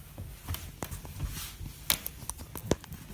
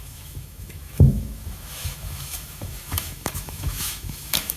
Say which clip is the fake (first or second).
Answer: second